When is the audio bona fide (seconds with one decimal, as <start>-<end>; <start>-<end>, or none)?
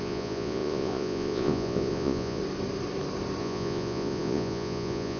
2.4-3.4